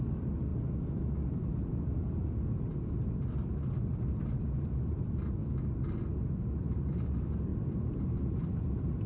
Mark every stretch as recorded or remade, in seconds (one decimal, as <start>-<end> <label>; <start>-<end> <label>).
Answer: 0.0-9.1 remade